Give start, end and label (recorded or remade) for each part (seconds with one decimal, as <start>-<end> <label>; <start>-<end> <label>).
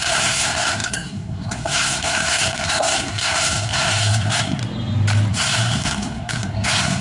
0.0-4.6 remade; 4.6-5.3 recorded; 5.3-7.0 remade